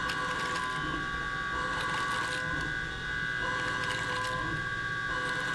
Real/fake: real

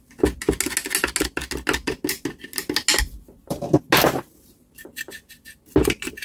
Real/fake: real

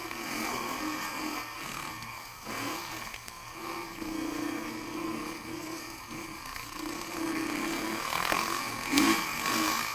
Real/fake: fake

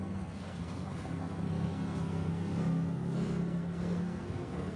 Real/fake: fake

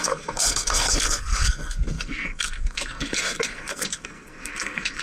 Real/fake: fake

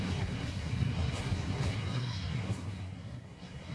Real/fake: fake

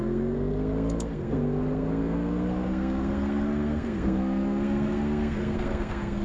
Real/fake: fake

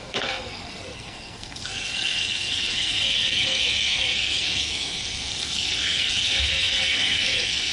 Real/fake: fake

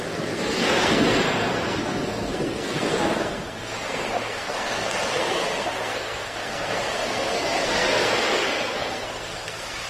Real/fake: fake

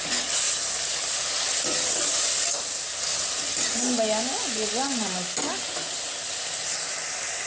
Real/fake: real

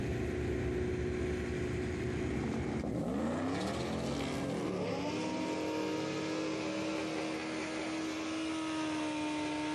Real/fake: real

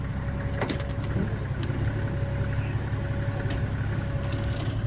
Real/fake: real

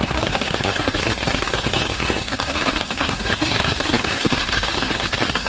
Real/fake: fake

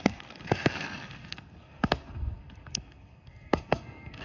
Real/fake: fake